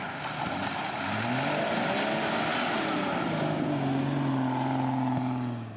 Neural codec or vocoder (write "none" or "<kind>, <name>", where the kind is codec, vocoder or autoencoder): none